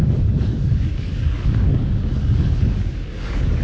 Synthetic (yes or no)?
yes